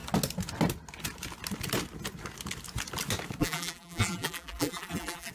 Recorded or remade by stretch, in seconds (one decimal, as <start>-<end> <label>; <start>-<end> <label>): 0.0-3.4 recorded; 3.4-5.3 remade